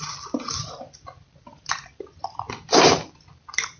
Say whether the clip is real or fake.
fake